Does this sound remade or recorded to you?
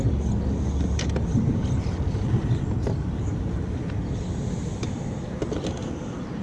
recorded